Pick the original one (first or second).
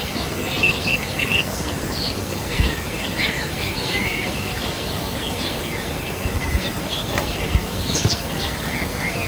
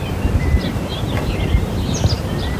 second